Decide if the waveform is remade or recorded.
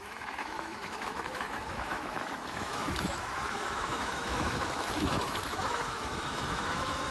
remade